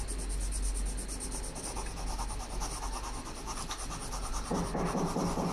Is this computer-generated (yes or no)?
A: no